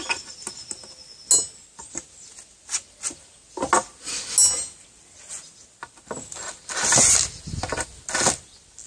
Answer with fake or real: real